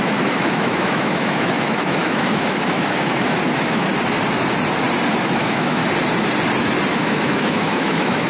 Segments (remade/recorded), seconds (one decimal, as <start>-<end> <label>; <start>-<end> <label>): 0.0-3.9 remade; 3.9-5.2 recorded; 5.2-5.8 remade; 5.8-6.9 recorded; 6.9-8.3 remade

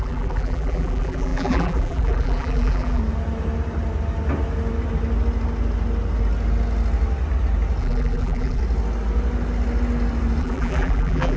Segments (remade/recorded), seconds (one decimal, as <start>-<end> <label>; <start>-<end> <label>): 0.0-3.0 remade; 3.0-7.8 recorded; 7.8-8.6 remade; 8.6-10.4 recorded; 10.4-11.4 remade

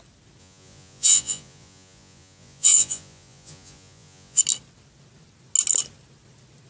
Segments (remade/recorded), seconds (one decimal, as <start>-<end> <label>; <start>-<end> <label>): 0.0-0.4 recorded; 0.4-4.4 remade; 4.4-6.7 recorded

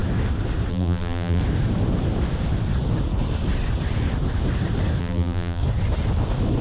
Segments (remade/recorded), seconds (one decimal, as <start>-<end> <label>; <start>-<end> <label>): 0.0-0.7 recorded; 0.7-1.4 remade; 1.4-5.0 recorded; 5.0-5.6 remade; 5.6-6.6 recorded

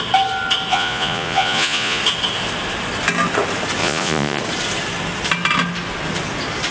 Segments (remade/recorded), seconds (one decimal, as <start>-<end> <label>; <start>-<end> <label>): 0.0-0.7 recorded; 0.7-2.0 remade; 2.0-3.8 recorded; 3.8-4.4 remade; 4.4-6.7 recorded

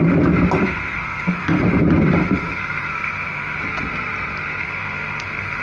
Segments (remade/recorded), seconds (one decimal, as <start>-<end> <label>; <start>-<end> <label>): 0.0-0.6 recorded; 0.6-1.6 remade; 1.6-2.2 recorded; 2.2-3.6 remade; 3.6-4.6 recorded; 4.6-5.6 remade